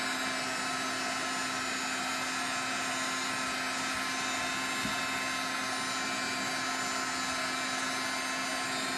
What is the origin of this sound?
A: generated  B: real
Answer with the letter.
B